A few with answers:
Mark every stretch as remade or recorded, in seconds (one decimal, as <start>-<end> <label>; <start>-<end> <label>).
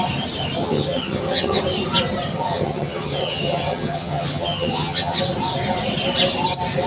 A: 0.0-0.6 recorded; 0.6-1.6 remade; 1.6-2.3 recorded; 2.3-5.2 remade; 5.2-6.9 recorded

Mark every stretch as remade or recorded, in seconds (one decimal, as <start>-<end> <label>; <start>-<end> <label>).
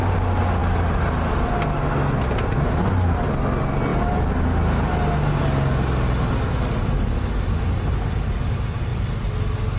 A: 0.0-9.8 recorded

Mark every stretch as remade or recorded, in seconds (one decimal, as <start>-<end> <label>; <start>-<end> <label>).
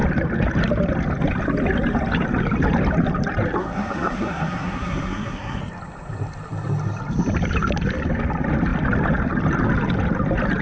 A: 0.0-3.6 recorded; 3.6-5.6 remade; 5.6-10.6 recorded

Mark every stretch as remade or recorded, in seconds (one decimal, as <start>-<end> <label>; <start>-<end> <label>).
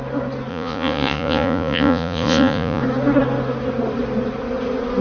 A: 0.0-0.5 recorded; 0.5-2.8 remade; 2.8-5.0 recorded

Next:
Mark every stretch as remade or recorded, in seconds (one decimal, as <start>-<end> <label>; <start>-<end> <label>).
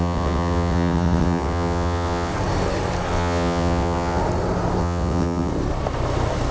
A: 0.0-2.3 remade; 2.3-3.1 recorded; 3.1-4.2 remade; 4.2-4.8 recorded; 4.8-5.5 remade; 5.5-6.5 recorded